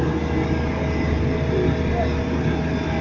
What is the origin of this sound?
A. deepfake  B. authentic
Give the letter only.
B